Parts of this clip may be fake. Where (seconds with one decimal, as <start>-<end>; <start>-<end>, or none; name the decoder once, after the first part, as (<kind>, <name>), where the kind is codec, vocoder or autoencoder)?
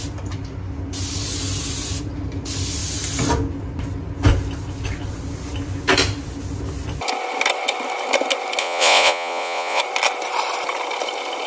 8.6-9.8 (vocoder, Vocos)